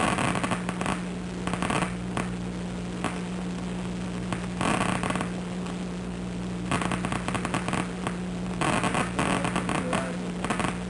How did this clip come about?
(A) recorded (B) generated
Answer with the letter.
A